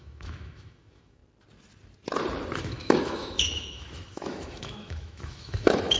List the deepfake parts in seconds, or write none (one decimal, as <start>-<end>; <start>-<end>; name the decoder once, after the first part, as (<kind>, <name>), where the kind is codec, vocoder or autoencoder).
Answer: 0.0-1.2 (autoencoder, DAC-VAE); 2.6-6.0

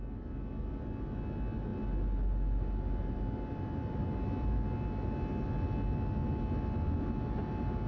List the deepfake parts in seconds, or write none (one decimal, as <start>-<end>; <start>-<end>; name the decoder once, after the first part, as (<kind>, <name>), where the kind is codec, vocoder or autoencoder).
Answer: none

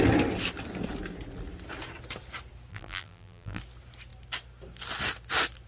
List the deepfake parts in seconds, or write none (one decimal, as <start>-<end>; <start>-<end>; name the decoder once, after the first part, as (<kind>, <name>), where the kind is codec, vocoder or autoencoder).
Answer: 2.7-3.6 (vocoder, BigVGAN v2)